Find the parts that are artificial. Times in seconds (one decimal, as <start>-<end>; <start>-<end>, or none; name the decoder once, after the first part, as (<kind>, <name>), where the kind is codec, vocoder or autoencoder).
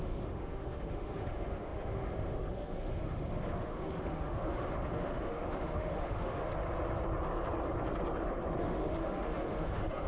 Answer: 0.0-6.5 (autoencoder, DAC-VAE); 8.6-10.1